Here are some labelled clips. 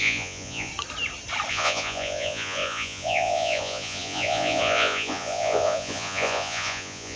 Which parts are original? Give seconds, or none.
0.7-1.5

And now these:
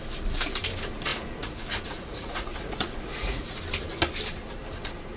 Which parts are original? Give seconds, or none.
0.0-1.1; 3.6-5.2

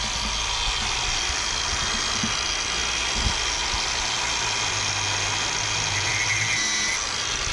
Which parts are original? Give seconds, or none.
0.0-7.5

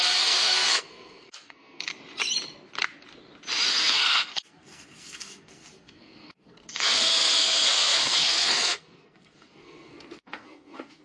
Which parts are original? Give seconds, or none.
1.9-3.7

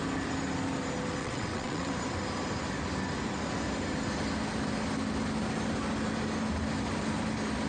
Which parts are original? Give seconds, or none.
0.0-1.2; 1.9-7.7

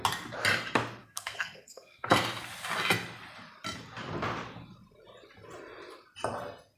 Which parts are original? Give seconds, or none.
0.0-1.0; 2.1-6.8